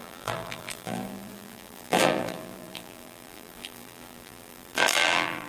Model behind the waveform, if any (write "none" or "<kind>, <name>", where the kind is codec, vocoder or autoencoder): vocoder, BigVGAN v2